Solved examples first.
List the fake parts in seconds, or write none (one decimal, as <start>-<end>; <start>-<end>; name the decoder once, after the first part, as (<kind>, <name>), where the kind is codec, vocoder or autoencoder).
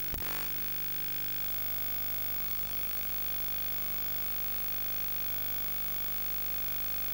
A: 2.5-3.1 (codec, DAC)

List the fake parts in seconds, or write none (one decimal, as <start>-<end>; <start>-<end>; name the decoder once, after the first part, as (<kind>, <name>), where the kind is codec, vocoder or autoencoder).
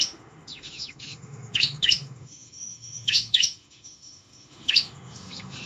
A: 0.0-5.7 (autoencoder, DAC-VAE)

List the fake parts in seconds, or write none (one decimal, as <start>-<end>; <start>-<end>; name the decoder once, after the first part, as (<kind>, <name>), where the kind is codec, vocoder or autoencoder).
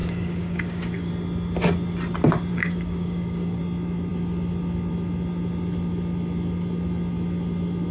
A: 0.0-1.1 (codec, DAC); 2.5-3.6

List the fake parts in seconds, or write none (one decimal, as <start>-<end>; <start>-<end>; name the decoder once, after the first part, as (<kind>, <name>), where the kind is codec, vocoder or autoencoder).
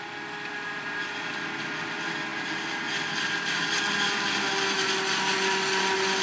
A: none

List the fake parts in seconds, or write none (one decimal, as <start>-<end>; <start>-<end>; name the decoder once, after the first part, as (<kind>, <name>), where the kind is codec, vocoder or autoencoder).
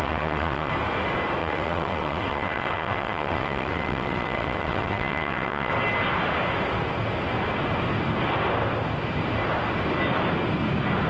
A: 0.0-0.7 (vocoder, WaveNeXt); 1.4-5.7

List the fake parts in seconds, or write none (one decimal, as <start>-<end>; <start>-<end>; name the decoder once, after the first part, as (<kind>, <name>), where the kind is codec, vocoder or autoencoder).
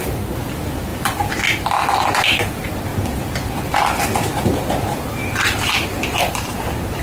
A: none